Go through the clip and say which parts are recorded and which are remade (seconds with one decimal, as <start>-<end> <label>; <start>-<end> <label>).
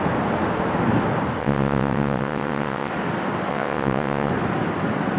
0.0-1.4 recorded; 1.4-2.9 remade; 2.9-3.5 recorded; 3.5-4.3 remade; 4.3-5.2 recorded